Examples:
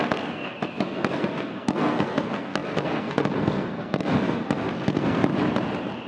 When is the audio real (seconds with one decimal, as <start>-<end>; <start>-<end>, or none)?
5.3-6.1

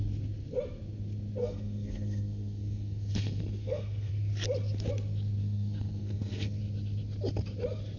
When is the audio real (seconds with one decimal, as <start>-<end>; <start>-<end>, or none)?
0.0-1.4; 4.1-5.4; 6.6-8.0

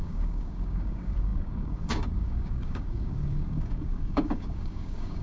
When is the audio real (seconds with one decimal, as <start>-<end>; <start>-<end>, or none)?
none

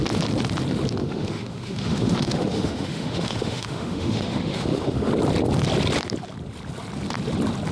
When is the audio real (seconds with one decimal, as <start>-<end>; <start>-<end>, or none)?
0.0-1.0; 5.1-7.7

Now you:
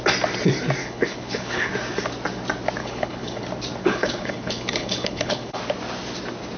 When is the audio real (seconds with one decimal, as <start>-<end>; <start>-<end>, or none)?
0.0-0.8; 1.7-2.8; 3.4-3.8; 5.6-6.6